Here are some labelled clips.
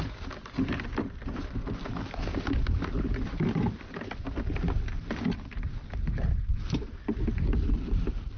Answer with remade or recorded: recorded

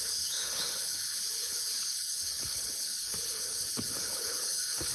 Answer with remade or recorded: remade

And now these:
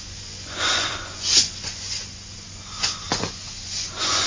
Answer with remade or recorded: remade